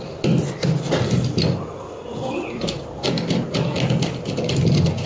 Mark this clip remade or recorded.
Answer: recorded